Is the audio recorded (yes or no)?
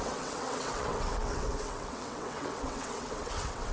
no